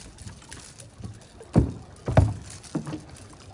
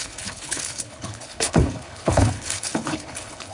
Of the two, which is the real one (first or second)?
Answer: first